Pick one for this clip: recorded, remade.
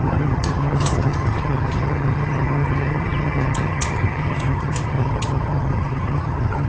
remade